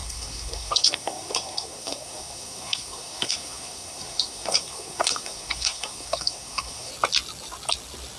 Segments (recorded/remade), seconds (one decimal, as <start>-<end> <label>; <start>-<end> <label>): 0.0-6.9 remade; 6.9-8.2 recorded